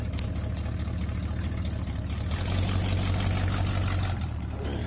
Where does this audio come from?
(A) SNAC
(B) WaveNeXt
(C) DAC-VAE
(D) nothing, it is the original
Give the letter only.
D